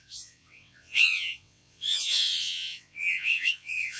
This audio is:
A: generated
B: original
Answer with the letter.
A